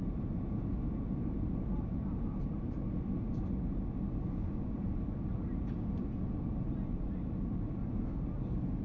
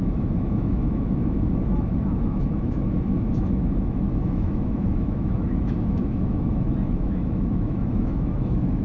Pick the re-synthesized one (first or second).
second